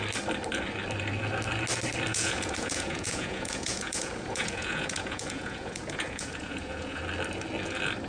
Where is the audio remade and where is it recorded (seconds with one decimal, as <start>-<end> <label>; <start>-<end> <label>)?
0.0-2.1 recorded; 2.1-7.0 remade; 7.0-8.1 recorded